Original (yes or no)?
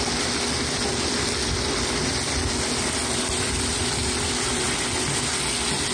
yes